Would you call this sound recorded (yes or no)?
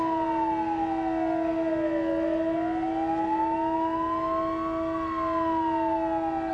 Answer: yes